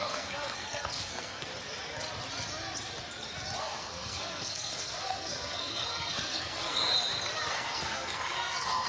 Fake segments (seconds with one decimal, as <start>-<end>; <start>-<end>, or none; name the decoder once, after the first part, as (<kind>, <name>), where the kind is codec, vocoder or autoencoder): 0.0-1.5 (codec, SNAC); 3.6-6.9; 7.5-8.9